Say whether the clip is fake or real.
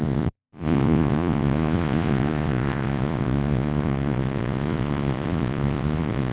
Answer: fake